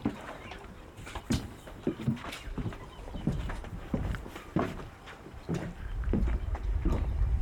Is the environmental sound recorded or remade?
remade